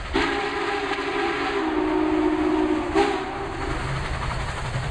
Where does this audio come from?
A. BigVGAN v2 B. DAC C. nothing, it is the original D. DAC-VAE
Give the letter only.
C